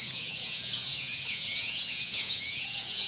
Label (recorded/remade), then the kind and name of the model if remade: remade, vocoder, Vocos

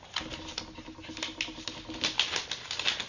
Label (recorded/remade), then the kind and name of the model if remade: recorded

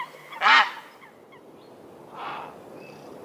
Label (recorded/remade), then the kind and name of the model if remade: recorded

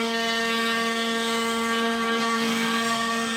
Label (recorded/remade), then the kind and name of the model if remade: remade, codec, SNAC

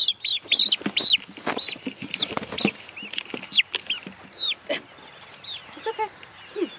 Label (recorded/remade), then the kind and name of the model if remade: recorded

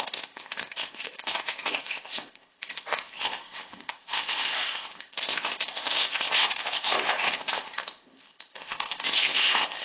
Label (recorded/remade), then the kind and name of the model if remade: remade, codec, ZipCodec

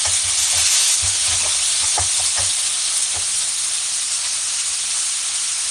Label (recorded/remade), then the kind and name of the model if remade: recorded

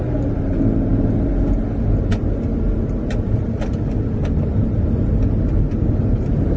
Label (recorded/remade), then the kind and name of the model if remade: recorded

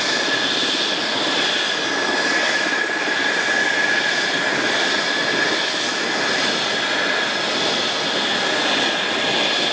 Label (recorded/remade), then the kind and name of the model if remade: recorded